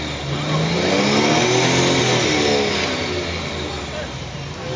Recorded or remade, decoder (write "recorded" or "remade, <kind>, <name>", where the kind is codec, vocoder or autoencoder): recorded